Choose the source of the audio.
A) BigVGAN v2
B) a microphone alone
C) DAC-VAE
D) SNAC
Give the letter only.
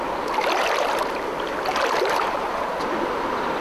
B